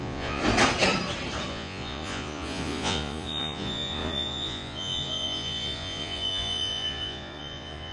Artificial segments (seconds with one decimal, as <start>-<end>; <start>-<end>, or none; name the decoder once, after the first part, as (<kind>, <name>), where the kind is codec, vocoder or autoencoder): 0.0-0.4 (vocoder, Vocos); 1.5-7.9